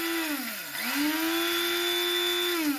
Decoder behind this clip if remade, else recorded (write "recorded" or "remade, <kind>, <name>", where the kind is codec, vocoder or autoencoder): recorded